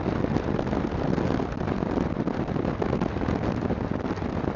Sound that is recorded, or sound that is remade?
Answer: recorded